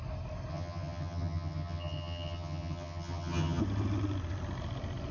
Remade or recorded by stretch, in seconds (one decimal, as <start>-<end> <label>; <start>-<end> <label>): 0.0-0.5 recorded; 0.5-3.6 remade; 3.6-5.1 recorded